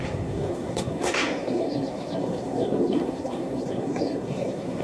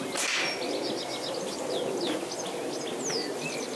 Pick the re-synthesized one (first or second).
first